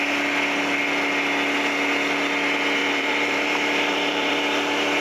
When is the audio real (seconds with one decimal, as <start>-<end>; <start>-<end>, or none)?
0.0-2.8; 4.3-5.0